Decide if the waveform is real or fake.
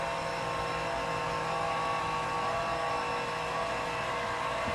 real